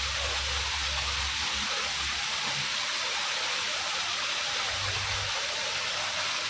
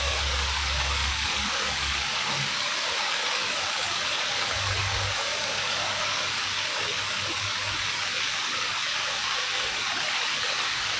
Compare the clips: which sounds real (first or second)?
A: first